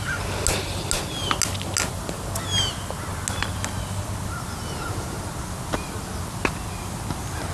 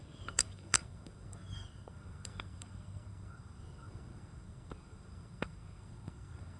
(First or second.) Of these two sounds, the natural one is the first